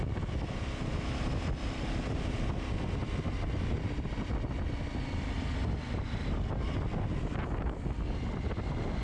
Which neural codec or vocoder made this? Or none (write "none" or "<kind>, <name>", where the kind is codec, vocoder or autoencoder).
none